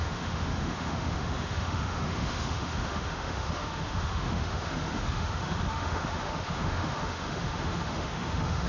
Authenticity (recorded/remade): remade